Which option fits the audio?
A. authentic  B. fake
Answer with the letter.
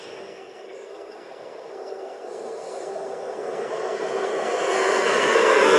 B